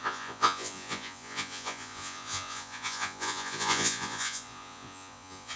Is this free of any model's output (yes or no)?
no